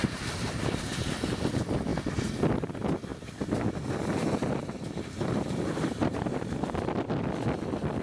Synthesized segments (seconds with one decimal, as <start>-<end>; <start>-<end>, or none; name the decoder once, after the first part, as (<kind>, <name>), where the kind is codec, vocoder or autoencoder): 0.0-1.5 (vocoder, BigVGAN v2); 4.2-6.5